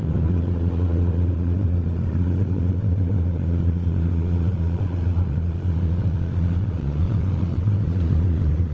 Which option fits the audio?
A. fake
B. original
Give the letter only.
A